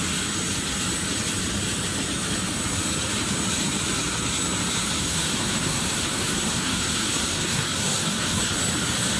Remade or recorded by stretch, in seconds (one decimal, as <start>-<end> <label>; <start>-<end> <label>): 0.0-5.0 recorded; 5.0-8.4 remade; 8.4-9.2 recorded